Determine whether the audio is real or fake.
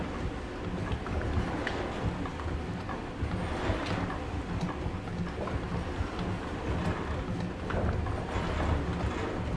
real